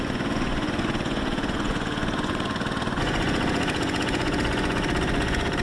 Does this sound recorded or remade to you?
remade